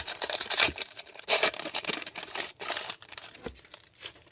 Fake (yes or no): yes